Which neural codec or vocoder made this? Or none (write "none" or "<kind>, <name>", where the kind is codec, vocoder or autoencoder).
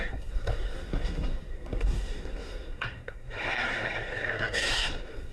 codec, SNAC